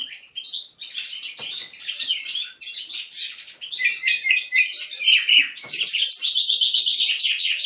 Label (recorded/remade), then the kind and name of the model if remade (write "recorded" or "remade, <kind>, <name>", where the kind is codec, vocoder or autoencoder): remade, vocoder, BigVGAN v2